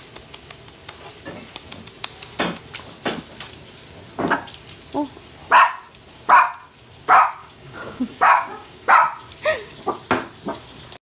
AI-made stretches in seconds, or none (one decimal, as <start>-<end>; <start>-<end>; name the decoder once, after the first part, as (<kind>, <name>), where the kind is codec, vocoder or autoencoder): 7.4-8.9 (codec, DAC)